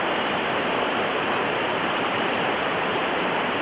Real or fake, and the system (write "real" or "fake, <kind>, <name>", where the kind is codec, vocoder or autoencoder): fake, vocoder, BigVGAN v2